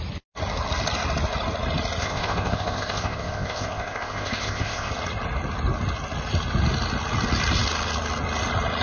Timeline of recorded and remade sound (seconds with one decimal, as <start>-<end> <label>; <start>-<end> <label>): 0.0-2.0 recorded; 2.0-4.9 remade; 4.9-8.8 recorded